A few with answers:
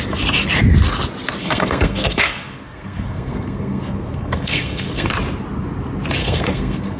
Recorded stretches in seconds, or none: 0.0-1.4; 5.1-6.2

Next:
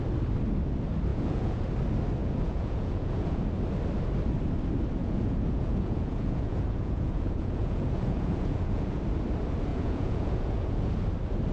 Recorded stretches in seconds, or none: 0.0-1.1; 1.7-2.2; 3.4-5.0; 9.0-9.7; 10.9-11.5

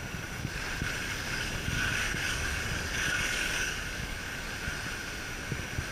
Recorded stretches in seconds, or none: 0.0-1.0; 4.5-5.9

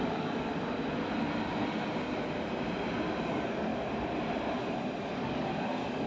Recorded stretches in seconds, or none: 0.5-3.3; 3.7-5.0

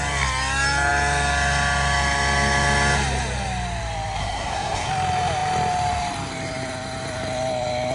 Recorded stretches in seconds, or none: 0.0-4.2; 4.9-7.9

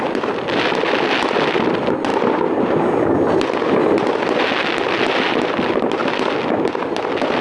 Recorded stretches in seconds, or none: 0.0-7.4

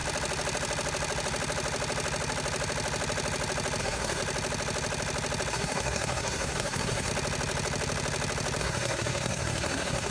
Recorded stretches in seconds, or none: 0.0-3.8; 4.2-5.5; 7.1-8.6

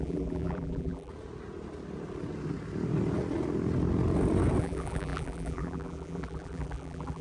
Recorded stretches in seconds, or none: 1.1-4.6